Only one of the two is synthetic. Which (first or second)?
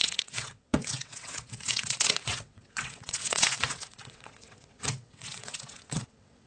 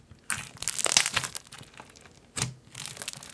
first